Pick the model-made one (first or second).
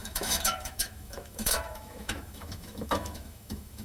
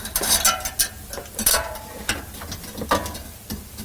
first